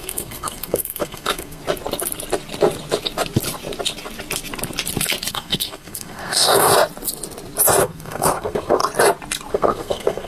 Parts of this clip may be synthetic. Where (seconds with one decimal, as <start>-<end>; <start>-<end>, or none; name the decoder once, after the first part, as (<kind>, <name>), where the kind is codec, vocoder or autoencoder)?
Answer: 0.0-1.6 (codec, SNAC); 5.3-6.7; 7.8-8.8; 9.5-10.3